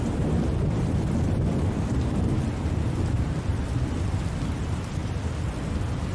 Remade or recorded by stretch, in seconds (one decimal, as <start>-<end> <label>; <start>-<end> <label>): 0.0-6.1 remade